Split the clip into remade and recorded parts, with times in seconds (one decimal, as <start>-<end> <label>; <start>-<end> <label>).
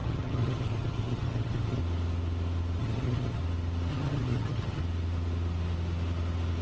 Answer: 0.0-1.8 remade; 1.8-2.8 recorded; 2.8-3.4 remade; 3.4-3.9 recorded; 3.9-4.8 remade; 4.8-6.6 recorded